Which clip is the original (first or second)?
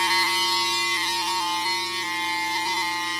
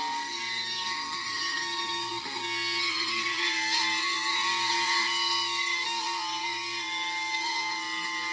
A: first